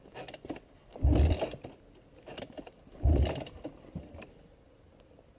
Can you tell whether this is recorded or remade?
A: recorded